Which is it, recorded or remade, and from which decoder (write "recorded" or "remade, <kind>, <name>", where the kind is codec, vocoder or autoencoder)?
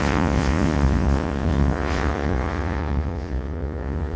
remade, vocoder, Vocos